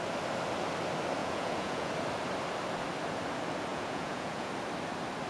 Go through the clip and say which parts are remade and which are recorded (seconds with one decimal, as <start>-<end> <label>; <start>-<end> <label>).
0.0-1.2 recorded; 1.2-1.9 remade; 1.9-3.7 recorded; 3.7-4.5 remade; 4.5-5.3 recorded